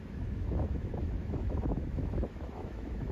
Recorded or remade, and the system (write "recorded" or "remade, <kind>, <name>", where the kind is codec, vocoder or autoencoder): remade, autoencoder, DAC-VAE